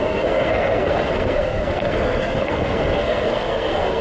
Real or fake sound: fake